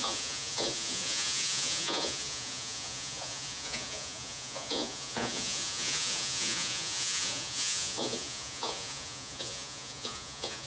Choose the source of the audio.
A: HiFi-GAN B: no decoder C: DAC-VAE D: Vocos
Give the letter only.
D